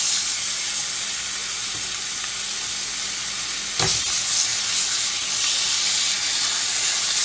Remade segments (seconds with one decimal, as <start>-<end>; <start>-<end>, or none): none